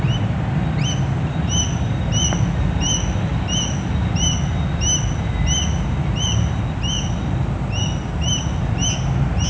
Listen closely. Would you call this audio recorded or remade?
recorded